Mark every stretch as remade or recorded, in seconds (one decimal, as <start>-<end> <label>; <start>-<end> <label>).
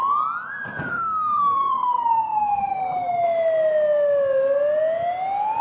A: 0.0-0.9 recorded; 0.9-2.8 remade; 2.8-5.6 recorded